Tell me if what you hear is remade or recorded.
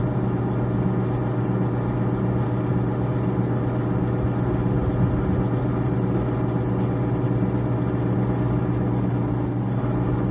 recorded